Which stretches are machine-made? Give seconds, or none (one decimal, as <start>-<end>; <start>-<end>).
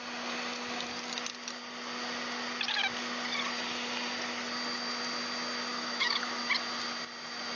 5.7-6.4